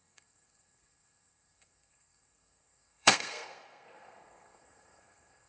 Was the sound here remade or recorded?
remade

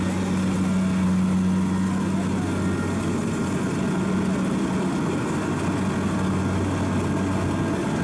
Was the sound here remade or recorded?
recorded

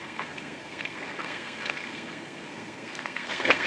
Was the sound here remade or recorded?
remade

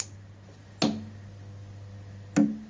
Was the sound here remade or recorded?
recorded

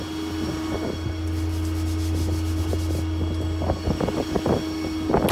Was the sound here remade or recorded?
recorded